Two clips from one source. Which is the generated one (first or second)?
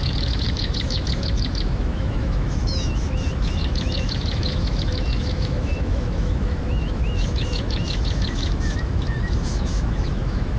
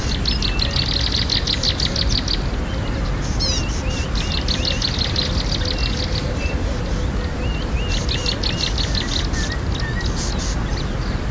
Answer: first